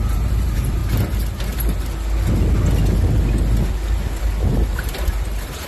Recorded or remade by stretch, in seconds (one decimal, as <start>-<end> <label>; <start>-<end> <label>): 0.0-0.8 remade; 0.8-4.2 recorded; 4.2-5.7 remade